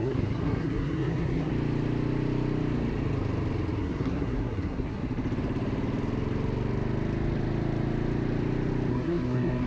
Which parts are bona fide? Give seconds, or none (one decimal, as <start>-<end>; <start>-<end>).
1.5-3.8; 5.0-8.9